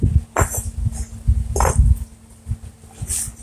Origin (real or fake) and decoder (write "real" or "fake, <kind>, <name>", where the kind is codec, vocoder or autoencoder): real